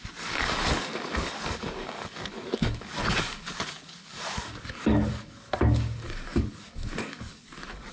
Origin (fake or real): fake